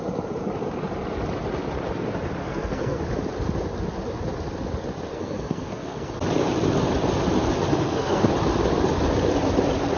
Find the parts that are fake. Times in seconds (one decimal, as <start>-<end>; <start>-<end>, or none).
2.4-3.0; 5.1-6.1; 7.7-8.3